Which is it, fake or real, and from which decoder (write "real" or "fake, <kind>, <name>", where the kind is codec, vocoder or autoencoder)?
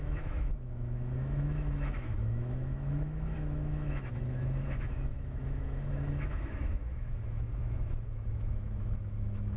fake, autoencoder, DAC-VAE